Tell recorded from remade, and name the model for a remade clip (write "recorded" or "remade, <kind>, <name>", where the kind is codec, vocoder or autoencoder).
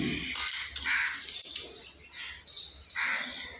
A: recorded